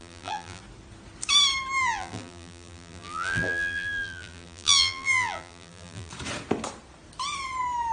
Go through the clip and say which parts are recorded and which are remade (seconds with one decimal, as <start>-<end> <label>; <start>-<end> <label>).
0.0-0.6 remade; 0.6-1.8 recorded; 1.8-6.1 remade; 6.1-7.9 recorded